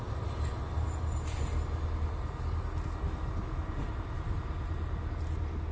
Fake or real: real